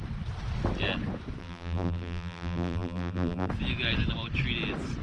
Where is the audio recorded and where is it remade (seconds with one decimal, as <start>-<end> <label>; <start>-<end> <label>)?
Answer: 0.0-1.4 recorded; 1.4-3.5 remade; 3.5-5.0 recorded